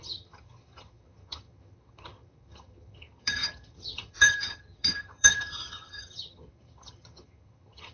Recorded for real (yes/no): no